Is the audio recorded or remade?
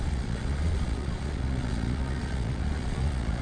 remade